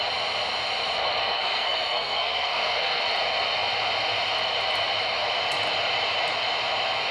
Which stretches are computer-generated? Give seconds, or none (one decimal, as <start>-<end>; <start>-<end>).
1.2-3.0